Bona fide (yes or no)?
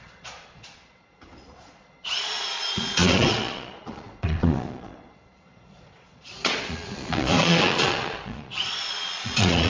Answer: no